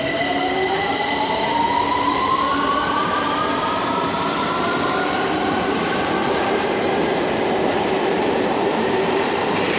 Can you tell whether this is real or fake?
fake